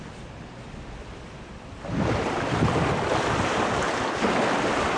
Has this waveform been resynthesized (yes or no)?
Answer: no